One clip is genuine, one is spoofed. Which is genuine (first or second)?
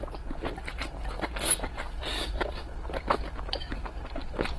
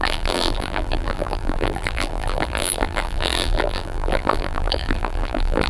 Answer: first